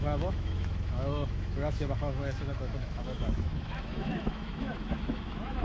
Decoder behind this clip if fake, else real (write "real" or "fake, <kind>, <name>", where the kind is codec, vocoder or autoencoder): fake, autoencoder, DAC-VAE